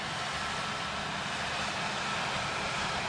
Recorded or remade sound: recorded